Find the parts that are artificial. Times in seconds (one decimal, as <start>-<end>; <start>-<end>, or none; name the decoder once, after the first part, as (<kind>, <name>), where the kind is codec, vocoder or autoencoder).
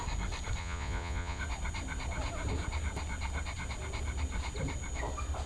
0.6-1.4 (vocoder, Vocos)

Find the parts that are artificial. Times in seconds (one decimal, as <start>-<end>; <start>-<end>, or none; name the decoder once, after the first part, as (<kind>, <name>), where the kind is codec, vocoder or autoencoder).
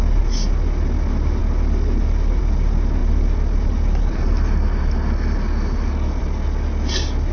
none